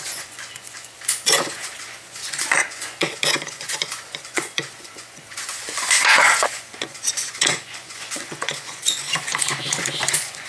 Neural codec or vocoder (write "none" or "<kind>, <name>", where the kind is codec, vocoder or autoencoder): vocoder, Vocos